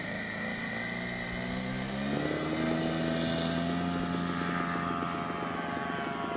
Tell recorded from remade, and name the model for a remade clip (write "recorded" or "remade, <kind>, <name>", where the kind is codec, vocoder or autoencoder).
recorded